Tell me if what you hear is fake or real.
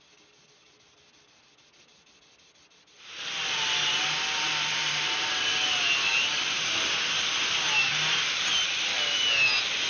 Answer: real